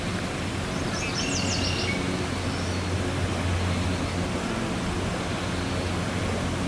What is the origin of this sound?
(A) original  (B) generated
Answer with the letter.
A